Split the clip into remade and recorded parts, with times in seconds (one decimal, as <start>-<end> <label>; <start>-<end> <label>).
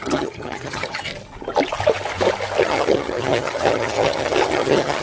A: 0.0-1.1 remade; 1.1-2.6 recorded; 2.6-5.0 remade